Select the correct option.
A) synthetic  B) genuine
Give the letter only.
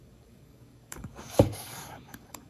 A